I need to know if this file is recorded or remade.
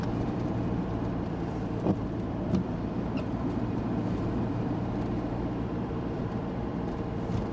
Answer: remade